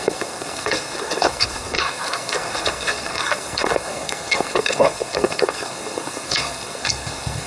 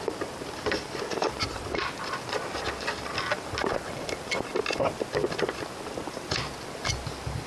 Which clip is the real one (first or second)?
second